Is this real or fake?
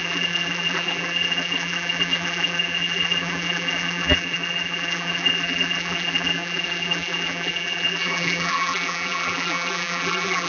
fake